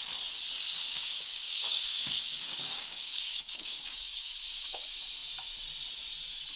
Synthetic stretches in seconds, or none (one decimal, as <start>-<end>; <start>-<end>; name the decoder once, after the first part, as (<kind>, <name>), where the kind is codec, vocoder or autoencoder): 0.9-4.8 (codec, DAC)